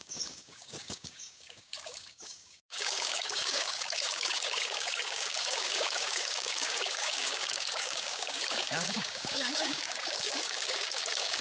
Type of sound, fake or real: fake